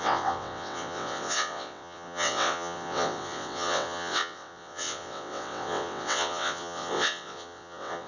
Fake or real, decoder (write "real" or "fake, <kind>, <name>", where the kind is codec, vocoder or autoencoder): fake, vocoder, WaveNeXt